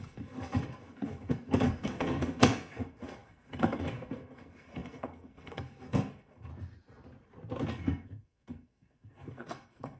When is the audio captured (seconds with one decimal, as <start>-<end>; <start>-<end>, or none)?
6.5-7.7